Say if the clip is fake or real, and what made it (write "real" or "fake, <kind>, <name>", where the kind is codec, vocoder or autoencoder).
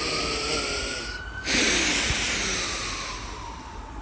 real